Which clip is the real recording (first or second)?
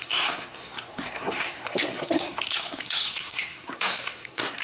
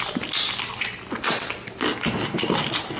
second